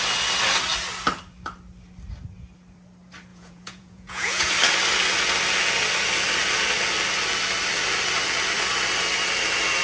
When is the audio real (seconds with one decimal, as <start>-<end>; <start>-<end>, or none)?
0.0-3.3; 4.5-9.8